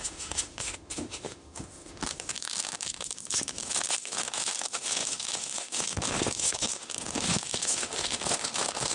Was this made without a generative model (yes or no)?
no